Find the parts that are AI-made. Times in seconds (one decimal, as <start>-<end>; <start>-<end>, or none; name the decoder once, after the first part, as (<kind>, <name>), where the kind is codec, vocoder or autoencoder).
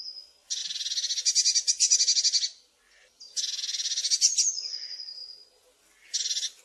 none